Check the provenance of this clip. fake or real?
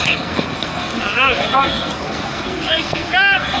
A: fake